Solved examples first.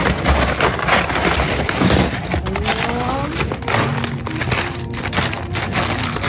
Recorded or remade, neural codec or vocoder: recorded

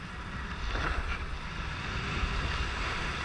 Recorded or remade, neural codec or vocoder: recorded